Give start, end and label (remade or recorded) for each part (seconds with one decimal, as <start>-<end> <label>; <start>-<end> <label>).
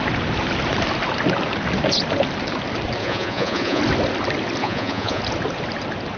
0.0-3.0 recorded; 3.0-3.8 remade; 3.8-4.6 recorded; 4.6-5.2 remade; 5.2-6.2 recorded